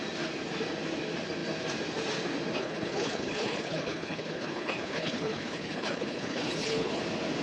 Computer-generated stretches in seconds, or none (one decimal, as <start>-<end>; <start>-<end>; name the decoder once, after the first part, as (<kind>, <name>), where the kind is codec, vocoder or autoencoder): 2.6-7.0 (codec, HILCodec)